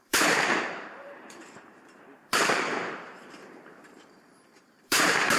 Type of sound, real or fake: fake